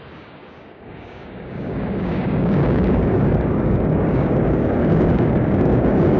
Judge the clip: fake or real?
fake